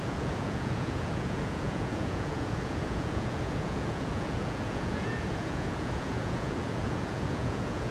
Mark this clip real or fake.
fake